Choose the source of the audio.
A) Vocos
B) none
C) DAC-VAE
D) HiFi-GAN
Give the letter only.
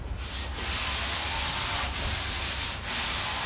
B